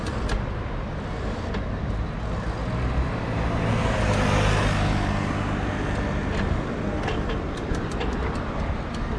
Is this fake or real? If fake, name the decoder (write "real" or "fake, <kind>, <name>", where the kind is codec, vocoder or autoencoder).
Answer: real